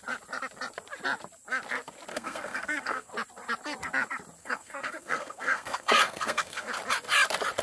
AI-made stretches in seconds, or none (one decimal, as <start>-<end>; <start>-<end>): 2.1-3.1; 4.4-6.7